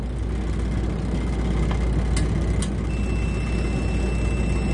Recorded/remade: recorded